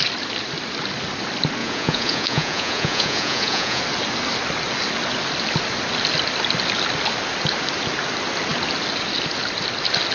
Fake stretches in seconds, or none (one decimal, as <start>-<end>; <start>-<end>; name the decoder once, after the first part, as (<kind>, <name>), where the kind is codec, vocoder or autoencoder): 1.6-3.8 (vocoder, Vocos)